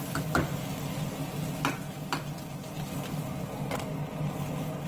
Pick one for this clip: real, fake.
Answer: real